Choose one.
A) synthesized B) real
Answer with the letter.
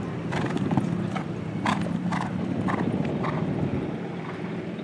B